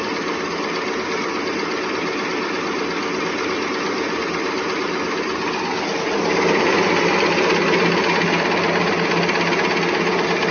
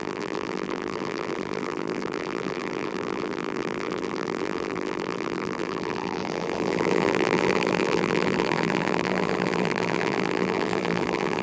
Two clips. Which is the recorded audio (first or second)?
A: first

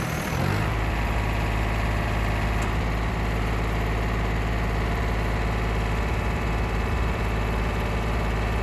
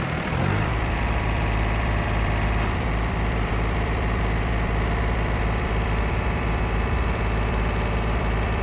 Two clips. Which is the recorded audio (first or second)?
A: first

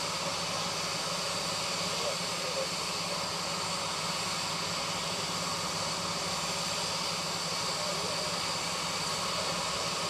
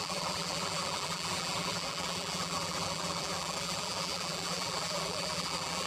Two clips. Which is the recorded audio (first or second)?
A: first